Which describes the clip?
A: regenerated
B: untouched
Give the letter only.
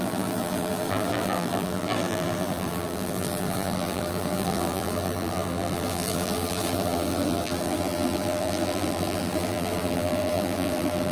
A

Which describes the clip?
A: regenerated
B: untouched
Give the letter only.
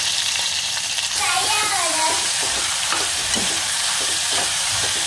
A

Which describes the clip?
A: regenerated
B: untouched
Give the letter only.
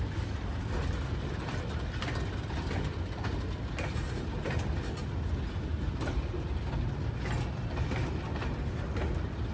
B